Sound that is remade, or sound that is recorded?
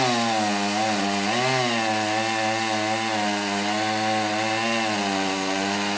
recorded